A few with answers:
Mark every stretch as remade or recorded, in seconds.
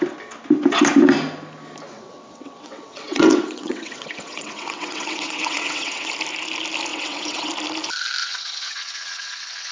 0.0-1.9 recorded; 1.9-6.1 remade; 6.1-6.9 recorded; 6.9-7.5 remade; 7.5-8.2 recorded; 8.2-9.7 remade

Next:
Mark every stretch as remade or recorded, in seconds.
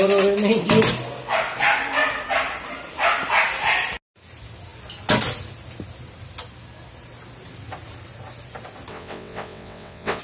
0.0-8.9 recorded; 8.9-10.2 remade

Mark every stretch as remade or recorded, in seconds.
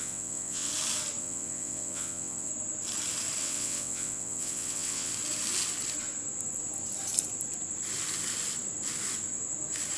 0.0-0.7 remade; 0.7-1.2 recorded; 1.2-2.5 remade; 2.5-3.4 recorded; 3.4-5.1 remade; 5.1-10.0 recorded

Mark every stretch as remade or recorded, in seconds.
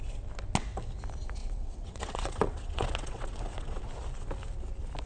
0.0-1.4 recorded; 1.4-3.8 remade; 3.8-5.1 recorded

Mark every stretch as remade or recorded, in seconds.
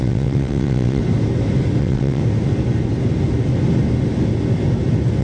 0.0-1.0 remade; 1.0-1.8 recorded; 1.8-2.2 remade; 2.2-5.2 recorded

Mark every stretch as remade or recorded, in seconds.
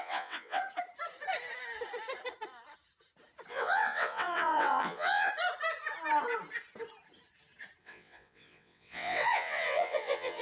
0.0-0.6 remade; 0.6-3.5 recorded; 3.5-5.3 remade; 5.3-7.8 recorded; 7.8-10.4 remade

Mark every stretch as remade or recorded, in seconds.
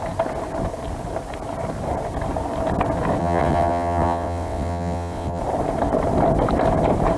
0.0-3.2 recorded; 3.2-5.4 remade; 5.4-7.2 recorded